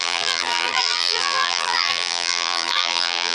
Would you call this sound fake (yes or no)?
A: yes